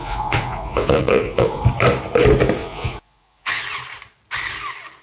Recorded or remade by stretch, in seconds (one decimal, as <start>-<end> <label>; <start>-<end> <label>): 0.0-1.6 remade; 1.6-2.6 recorded; 2.6-3.6 remade; 3.6-5.0 recorded

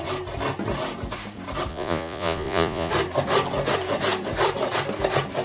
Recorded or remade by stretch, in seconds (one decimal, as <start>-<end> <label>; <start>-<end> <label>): 0.0-1.7 recorded; 1.7-2.9 remade; 2.9-5.4 recorded

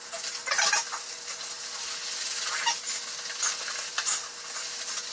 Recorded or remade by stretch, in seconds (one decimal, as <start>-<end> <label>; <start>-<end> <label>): 0.0-5.1 recorded